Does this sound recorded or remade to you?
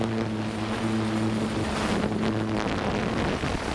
recorded